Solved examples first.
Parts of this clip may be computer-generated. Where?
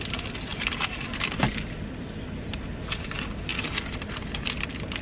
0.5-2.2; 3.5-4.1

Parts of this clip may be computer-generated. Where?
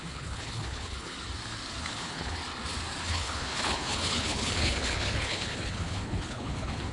0.0-1.1; 1.8-2.4; 3.0-6.9